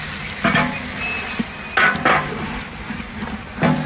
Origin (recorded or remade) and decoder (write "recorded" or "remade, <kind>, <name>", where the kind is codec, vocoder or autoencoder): recorded